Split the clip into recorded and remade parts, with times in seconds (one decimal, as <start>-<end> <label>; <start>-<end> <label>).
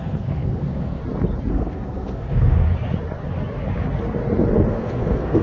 0.0-1.0 remade; 1.0-1.5 recorded; 1.5-2.7 remade; 2.7-4.7 recorded; 4.7-5.4 remade